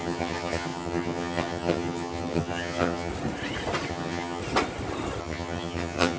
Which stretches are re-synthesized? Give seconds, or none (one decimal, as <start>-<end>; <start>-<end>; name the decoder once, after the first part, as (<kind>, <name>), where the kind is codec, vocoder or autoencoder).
0.0-3.1 (vocoder, HiFi-GAN); 3.9-4.4; 5.2-6.2